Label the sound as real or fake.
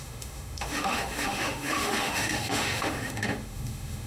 fake